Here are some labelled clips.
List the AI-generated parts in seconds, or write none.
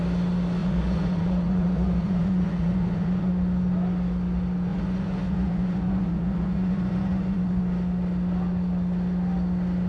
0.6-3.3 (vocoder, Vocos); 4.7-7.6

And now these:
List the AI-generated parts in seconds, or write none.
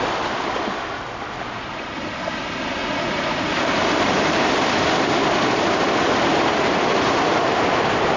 2.8-3.5 (vocoder, Vocos)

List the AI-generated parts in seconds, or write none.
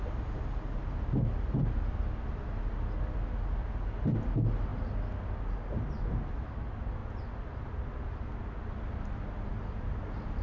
none